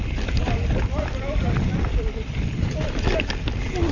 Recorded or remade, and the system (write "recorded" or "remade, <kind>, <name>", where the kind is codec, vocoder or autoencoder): recorded